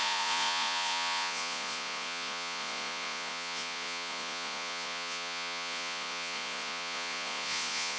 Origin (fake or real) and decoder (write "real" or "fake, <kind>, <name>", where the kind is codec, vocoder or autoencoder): fake, vocoder, Vocos